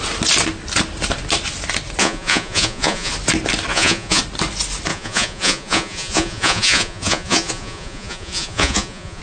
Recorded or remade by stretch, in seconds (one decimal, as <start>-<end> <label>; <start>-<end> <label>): 0.0-2.0 recorded; 2.0-3.1 remade; 3.1-3.7 recorded; 3.7-4.2 remade; 4.2-4.9 recorded; 4.9-9.2 remade